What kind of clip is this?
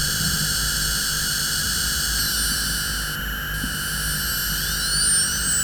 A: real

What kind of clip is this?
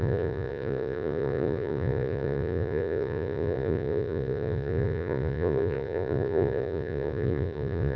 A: fake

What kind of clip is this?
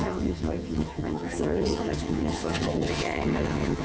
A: fake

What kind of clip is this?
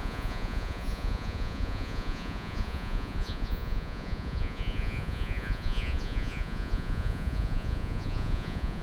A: fake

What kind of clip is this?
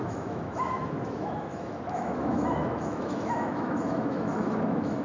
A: fake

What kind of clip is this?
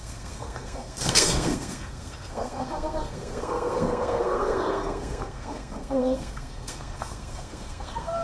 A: fake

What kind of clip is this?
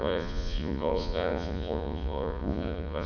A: fake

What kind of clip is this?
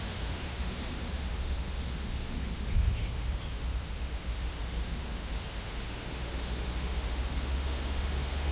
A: fake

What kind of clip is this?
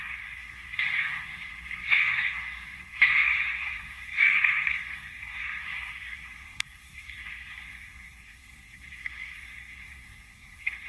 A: fake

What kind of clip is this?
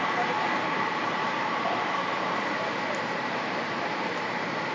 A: fake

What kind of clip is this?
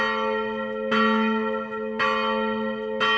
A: real